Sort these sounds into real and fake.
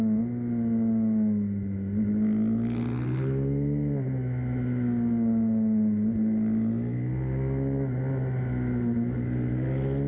real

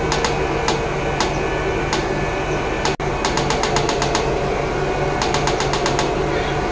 real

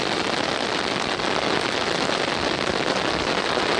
real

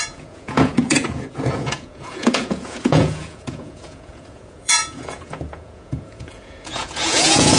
fake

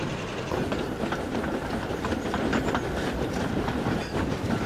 real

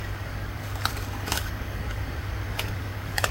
fake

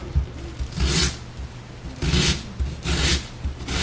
real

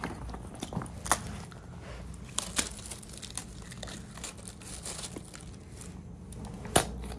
real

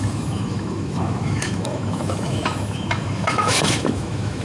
fake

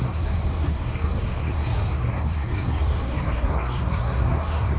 fake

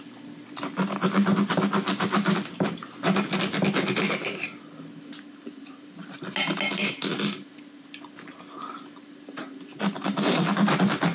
real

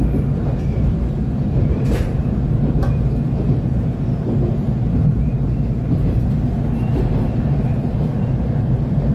fake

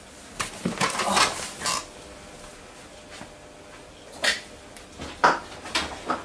real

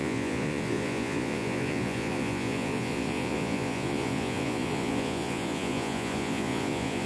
fake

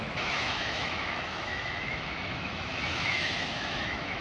fake